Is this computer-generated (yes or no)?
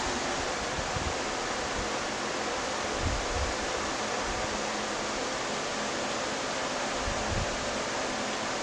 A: yes